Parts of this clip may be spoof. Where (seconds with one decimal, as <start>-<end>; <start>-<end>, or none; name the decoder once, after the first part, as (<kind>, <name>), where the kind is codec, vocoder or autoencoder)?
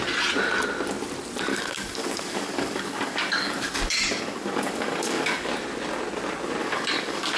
1.5-5.5 (codec, DAC); 6.6-7.4